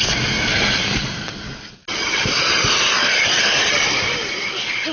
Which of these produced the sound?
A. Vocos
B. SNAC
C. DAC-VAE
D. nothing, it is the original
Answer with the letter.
D